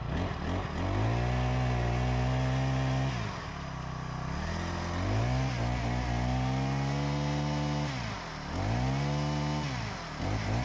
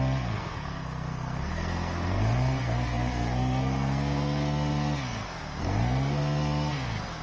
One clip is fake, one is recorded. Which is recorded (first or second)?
first